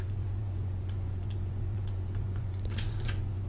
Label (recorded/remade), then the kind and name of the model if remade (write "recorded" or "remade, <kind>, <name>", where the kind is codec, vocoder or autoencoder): remade, vocoder, Vocos